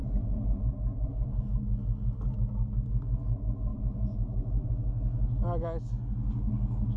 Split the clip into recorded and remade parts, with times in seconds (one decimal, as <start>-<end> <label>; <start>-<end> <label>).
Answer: 0.0-1.4 remade; 1.4-3.7 recorded; 3.7-4.7 remade; 4.7-7.0 recorded